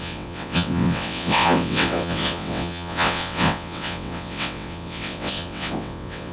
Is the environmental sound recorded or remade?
remade